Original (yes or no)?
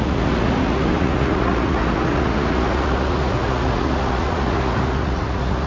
no